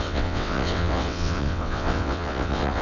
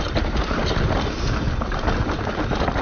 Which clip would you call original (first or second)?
second